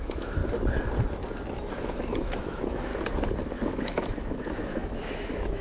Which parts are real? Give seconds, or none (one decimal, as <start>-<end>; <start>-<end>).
0.4-1.7; 2.9-3.7

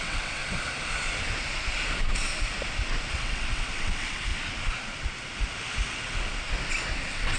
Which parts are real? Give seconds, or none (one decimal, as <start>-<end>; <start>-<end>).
0.4-3.1; 4.3-7.0